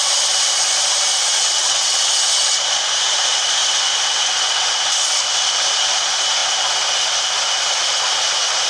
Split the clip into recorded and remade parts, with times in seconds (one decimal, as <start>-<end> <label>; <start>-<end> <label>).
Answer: 0.0-1.3 recorded; 1.3-2.1 remade; 2.1-8.7 recorded